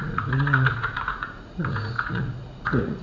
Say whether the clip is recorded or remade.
remade